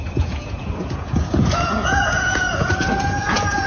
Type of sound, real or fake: fake